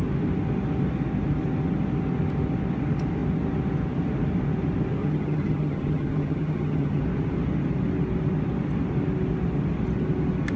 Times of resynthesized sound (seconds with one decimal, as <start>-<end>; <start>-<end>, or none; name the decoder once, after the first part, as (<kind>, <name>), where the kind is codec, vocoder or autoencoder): 5.0-7.0 (vocoder, HiFi-GAN)